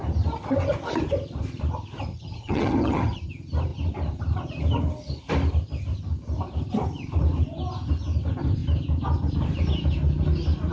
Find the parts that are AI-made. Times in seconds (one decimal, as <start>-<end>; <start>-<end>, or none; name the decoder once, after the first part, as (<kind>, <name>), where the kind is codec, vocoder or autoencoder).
2.1-3.3 (vocoder, HiFi-GAN)